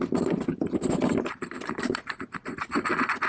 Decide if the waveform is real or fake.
real